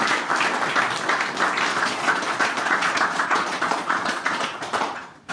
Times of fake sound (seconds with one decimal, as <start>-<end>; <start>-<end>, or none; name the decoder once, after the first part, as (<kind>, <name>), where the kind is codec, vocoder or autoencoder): 1.7-5.3 (vocoder, Vocos)